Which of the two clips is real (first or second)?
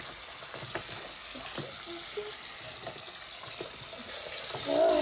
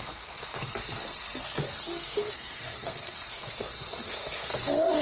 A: first